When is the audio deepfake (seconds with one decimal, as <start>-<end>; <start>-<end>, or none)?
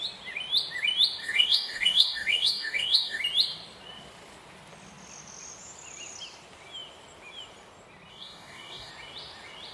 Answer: 1.2-3.2; 8.1-8.9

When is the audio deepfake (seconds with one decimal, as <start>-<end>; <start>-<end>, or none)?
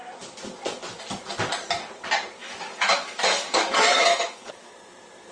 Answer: 2.4-4.7